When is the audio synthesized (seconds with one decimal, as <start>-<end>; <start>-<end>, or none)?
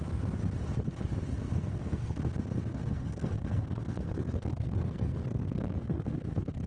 1.3-2.2; 2.7-6.7